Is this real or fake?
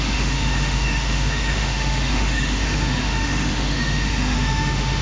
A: fake